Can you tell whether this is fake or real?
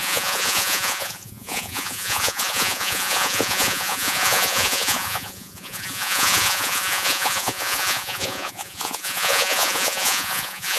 fake